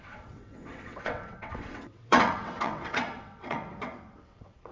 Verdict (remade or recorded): remade